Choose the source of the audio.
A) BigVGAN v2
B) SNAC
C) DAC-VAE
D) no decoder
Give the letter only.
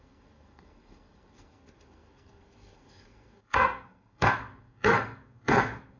B